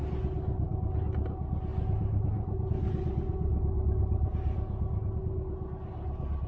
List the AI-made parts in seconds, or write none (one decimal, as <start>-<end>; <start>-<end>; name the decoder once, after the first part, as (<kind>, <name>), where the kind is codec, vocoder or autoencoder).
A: none